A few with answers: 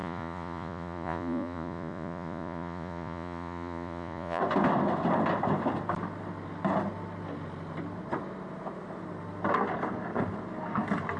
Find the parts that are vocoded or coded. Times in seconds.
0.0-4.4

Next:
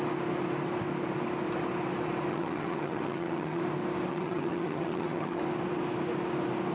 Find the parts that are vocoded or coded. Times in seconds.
2.3-3.6; 4.1-5.4

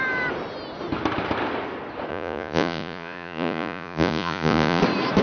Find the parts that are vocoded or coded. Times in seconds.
2.1-4.8

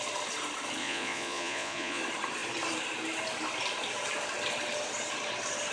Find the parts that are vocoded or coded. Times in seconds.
0.8-2.0